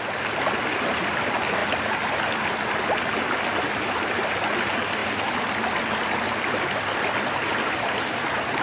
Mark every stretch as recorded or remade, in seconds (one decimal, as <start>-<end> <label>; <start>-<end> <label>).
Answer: 0.0-8.6 recorded